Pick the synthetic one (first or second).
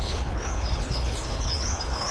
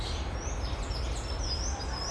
first